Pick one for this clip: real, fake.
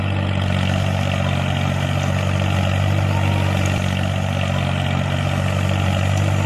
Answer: real